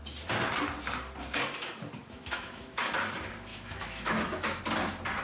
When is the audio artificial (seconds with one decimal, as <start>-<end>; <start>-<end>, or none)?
2.0-2.8; 3.5-4.6